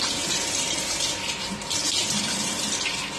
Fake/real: real